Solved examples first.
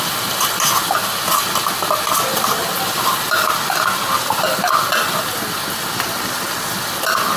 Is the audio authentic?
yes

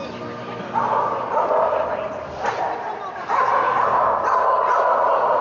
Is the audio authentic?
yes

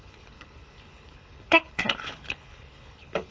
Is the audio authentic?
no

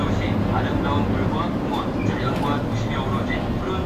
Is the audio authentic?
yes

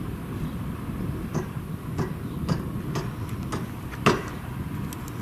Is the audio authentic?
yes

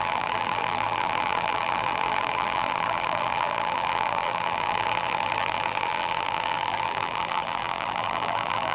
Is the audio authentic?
no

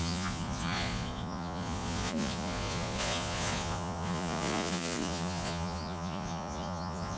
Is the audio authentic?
no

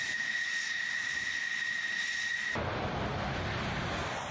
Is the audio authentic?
yes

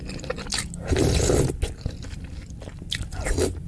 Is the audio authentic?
yes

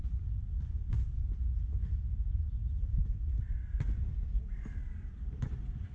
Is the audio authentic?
yes